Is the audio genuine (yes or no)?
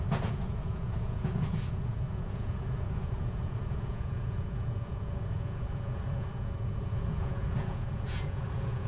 no